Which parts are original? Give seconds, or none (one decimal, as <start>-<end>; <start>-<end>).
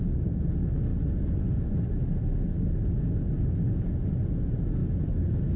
0.0-5.6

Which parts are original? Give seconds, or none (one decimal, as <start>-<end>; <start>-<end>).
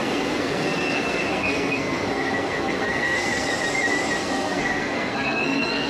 3.5-4.2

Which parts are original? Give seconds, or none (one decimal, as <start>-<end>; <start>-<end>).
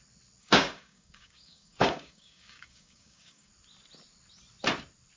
0.0-0.4; 3.5-5.2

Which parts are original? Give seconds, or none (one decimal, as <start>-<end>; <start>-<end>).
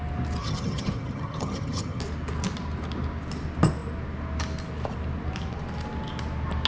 0.0-0.4; 2.0-6.7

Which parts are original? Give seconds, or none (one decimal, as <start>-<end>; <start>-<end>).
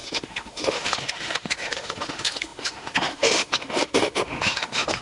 none